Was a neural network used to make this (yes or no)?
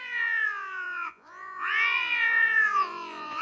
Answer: yes